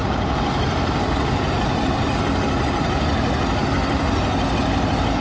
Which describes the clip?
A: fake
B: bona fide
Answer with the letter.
B